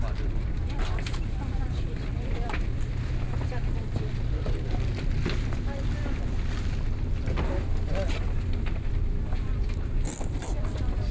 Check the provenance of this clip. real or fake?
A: fake